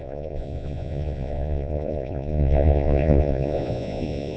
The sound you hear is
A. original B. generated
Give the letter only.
B